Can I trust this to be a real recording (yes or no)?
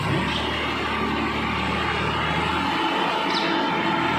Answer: yes